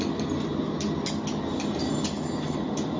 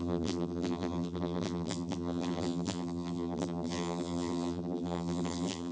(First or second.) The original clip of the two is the first